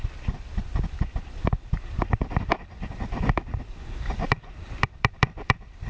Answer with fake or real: fake